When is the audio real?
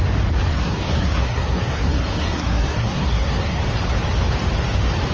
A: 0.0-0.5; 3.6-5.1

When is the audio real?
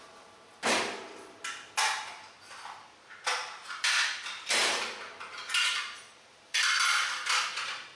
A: 0.0-8.0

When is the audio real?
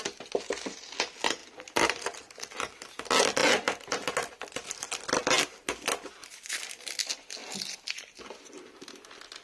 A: 0.0-6.2; 6.9-9.4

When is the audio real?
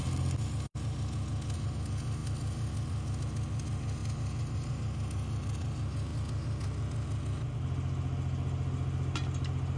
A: 0.0-9.8